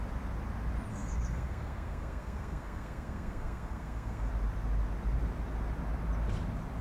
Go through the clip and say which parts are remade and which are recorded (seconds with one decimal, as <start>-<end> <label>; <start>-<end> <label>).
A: 0.0-0.9 recorded; 0.9-4.3 remade; 4.3-6.8 recorded